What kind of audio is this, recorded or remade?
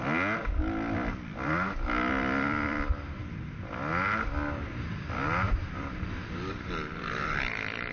recorded